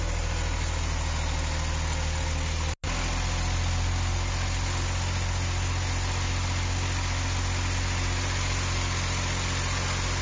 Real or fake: real